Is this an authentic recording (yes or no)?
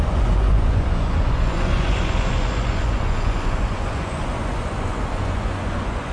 no